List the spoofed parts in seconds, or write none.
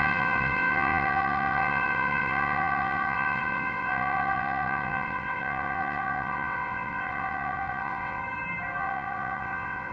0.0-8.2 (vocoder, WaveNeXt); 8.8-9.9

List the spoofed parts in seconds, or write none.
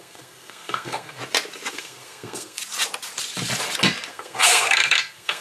0.0-1.2 (codec, SNAC); 1.7-2.6; 4.1-5.4